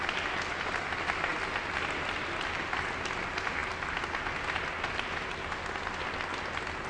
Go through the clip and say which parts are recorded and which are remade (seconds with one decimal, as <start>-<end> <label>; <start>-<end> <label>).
0.0-6.9 recorded